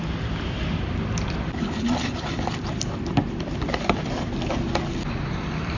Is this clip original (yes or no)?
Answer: no